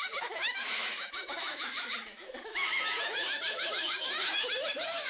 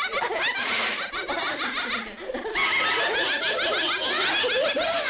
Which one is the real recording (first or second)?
second